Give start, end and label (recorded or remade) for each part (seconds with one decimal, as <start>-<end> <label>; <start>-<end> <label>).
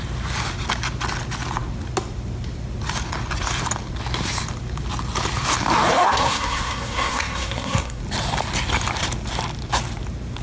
0.0-6.0 recorded; 6.0-8.0 remade; 8.0-10.4 recorded